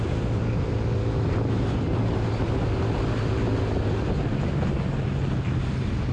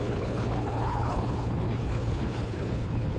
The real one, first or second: first